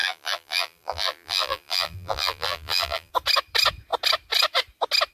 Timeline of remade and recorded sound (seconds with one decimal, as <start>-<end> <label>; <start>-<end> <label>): 0.0-3.1 remade; 3.1-5.1 recorded